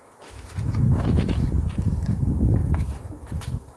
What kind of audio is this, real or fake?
fake